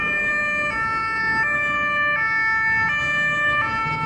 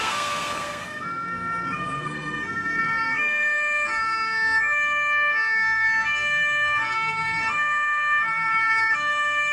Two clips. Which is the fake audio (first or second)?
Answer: second